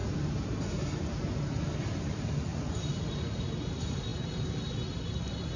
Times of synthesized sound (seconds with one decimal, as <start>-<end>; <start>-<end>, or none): none